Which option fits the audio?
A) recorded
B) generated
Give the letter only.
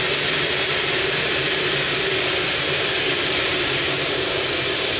B